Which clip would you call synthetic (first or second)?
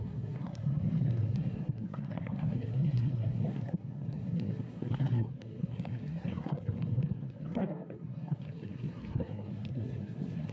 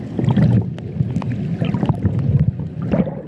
first